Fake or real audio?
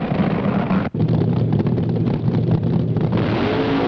real